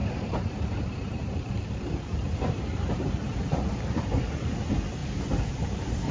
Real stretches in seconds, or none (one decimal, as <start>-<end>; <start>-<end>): 3.7-6.1